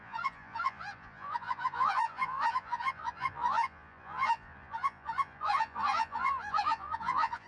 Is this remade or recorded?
remade